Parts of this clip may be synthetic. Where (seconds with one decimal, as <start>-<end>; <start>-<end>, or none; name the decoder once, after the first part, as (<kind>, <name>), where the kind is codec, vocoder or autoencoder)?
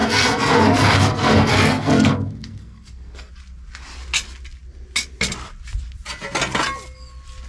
0.0-3.3 (codec, SNAC)